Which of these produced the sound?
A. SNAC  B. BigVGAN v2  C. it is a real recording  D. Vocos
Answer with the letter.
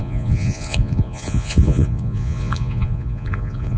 D